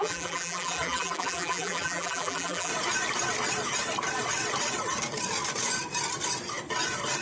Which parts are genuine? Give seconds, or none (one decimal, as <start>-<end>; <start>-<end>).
2.7-7.2